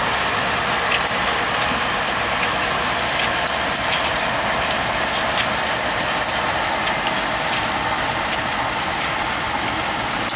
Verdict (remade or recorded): recorded